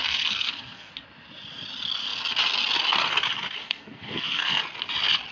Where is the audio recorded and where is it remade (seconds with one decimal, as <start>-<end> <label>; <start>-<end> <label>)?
0.0-0.9 remade; 0.9-3.6 recorded; 3.6-4.6 remade; 4.6-5.3 recorded